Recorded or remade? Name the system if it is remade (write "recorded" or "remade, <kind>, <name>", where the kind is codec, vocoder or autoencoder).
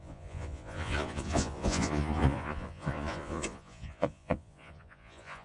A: remade, vocoder, Vocos